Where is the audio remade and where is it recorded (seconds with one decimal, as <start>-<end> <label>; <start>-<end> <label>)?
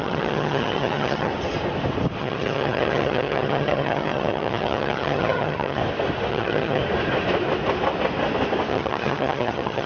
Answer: 0.0-1.3 remade; 1.3-2.2 recorded; 2.2-5.8 remade; 5.8-6.3 recorded; 6.3-6.8 remade; 6.8-8.7 recorded; 8.7-9.9 remade